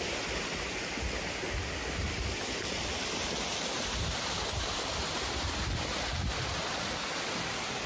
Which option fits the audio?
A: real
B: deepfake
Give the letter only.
A